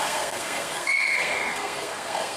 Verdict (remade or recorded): remade